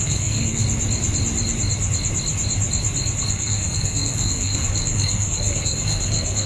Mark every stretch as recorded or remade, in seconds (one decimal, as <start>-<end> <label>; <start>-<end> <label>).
0.0-0.6 remade; 0.6-3.3 recorded; 3.3-6.5 remade